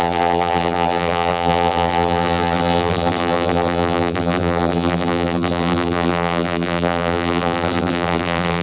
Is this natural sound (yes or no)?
no